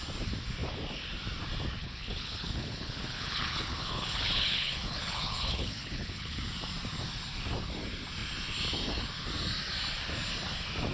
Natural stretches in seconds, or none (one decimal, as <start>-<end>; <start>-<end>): 0.0-1.8; 6.4-10.9